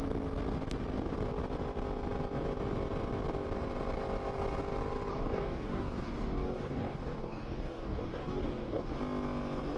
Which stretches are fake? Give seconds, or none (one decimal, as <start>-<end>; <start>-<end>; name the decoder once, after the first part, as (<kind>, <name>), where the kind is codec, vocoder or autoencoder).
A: 5.1-9.0 (codec, DAC)